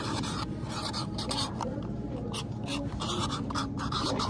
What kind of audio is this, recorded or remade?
remade